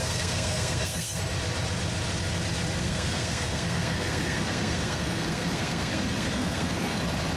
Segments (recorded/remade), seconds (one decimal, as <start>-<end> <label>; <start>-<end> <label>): 0.0-1.2 remade; 1.2-2.8 recorded; 2.8-7.0 remade; 7.0-7.4 recorded